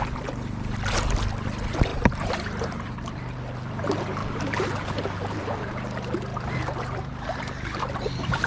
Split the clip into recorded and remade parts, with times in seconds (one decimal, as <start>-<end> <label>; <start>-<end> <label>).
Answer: 0.0-1.9 recorded; 1.9-3.2 remade; 3.2-4.2 recorded; 4.2-5.4 remade; 5.4-6.3 recorded; 6.3-8.5 remade